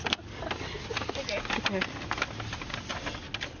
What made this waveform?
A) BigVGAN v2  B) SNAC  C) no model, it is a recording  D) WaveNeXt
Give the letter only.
C